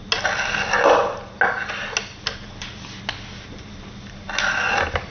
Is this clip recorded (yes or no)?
yes